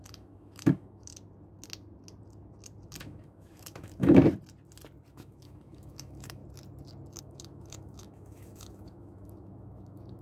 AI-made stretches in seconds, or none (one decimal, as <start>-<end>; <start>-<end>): 0.0-1.1; 3.0-4.2; 5.1-6.4; 7.2-10.2